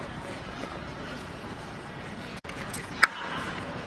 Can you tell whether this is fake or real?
fake